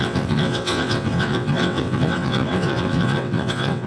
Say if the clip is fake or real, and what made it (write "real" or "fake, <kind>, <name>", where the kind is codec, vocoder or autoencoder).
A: fake, vocoder, WaveNeXt